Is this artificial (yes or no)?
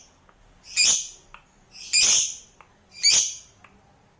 no